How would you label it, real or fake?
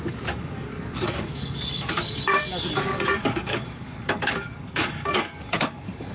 fake